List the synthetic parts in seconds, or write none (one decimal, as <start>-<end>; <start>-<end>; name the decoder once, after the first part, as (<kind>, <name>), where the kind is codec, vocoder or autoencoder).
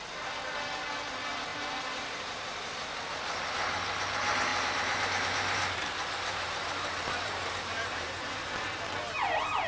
1.5-3.1 (vocoder, BigVGAN v2); 4.5-8.8